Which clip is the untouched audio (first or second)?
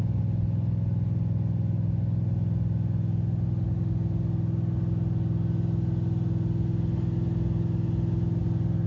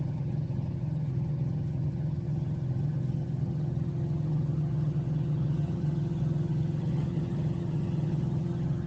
first